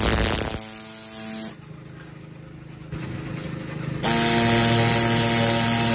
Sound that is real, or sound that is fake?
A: real